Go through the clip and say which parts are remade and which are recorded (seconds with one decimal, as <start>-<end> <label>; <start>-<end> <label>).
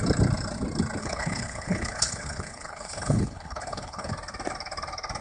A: 0.0-1.0 recorded; 1.0-4.1 remade; 4.1-5.2 recorded